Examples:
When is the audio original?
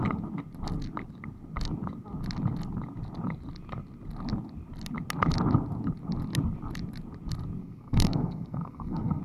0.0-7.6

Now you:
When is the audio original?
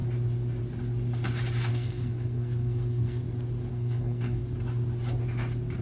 0.0-1.7; 3.2-3.7; 4.4-5.8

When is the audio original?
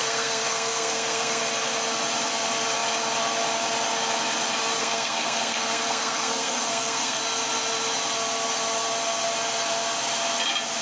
1.4-4.8; 7.2-10.8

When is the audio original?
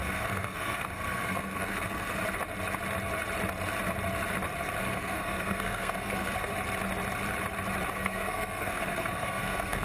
2.2-4.8; 6.5-7.9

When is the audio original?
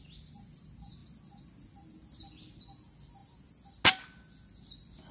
0.0-5.1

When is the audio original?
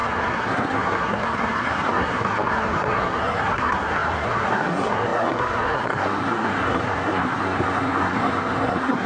none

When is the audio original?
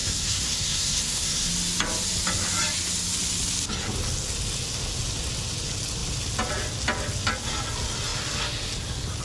1.5-9.2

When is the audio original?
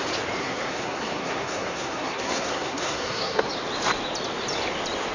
0.0-0.4; 3.5-5.1